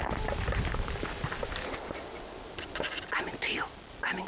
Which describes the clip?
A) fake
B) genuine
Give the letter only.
B